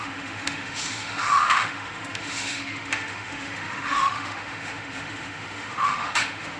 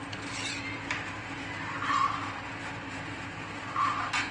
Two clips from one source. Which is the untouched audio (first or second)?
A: second